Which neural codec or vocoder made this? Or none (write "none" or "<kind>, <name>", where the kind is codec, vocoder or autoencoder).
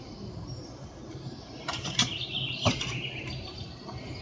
none